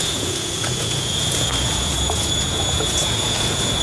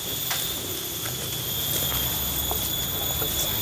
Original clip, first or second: second